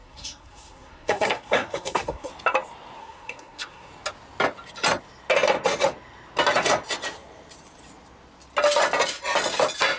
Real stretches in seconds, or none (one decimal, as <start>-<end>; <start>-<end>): 2.3-3.0; 3.9-10.0